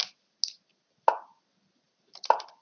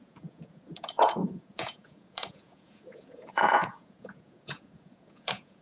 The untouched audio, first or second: first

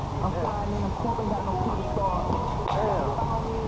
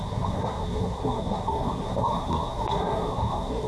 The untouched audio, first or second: first